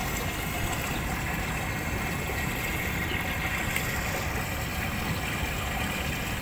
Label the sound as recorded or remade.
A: recorded